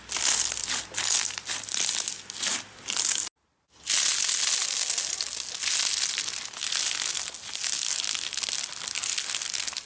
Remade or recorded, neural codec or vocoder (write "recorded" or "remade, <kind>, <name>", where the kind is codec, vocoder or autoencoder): recorded